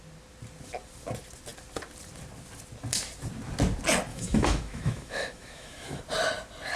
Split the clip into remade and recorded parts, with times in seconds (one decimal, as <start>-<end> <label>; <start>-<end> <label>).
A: 0.0-4.1 recorded; 4.1-6.0 remade; 6.0-6.8 recorded